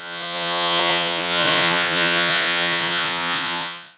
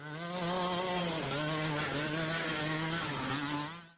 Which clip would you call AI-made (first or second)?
first